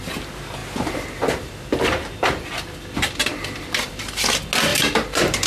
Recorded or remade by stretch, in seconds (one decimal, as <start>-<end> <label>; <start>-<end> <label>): 0.0-4.7 recorded; 4.7-5.5 remade